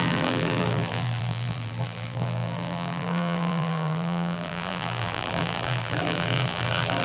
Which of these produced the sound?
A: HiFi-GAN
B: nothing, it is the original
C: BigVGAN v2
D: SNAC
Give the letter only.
C